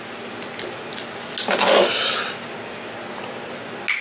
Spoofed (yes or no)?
no